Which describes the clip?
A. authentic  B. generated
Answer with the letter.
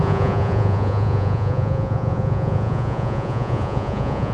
B